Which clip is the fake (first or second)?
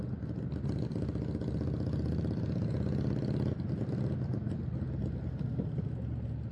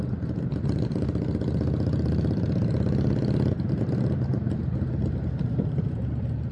second